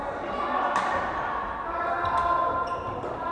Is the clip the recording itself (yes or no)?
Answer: yes